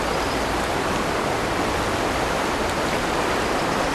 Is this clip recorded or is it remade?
recorded